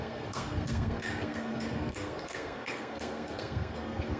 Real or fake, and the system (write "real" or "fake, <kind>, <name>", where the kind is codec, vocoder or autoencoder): fake, codec, SNAC